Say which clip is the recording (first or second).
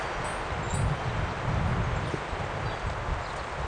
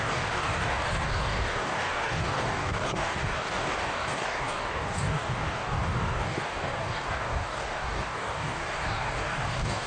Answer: first